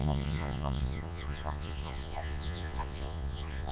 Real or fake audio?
fake